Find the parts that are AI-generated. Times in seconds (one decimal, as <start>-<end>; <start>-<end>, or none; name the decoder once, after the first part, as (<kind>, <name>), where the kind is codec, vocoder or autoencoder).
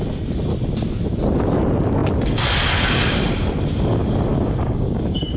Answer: 4.3-5.4 (codec, DAC)